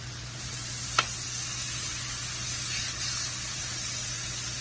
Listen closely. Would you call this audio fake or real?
real